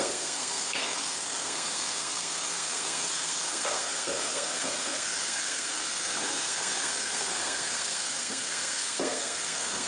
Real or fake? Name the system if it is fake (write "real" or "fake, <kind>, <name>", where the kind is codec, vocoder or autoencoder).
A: fake, codec, SNAC